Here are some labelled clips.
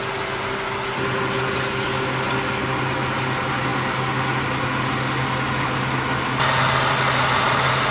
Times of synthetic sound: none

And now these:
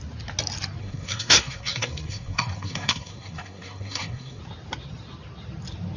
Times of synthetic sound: 0.8-4.4 (codec, SNAC)